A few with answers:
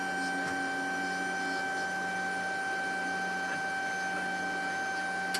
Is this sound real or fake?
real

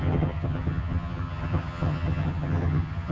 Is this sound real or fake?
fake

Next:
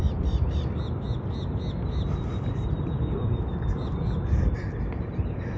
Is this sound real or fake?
real